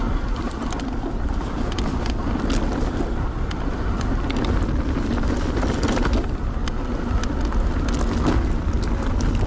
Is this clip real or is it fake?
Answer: real